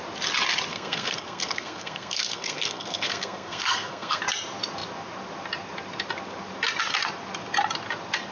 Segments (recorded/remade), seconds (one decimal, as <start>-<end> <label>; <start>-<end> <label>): 0.0-0.7 recorded; 0.7-4.2 remade; 4.2-8.3 recorded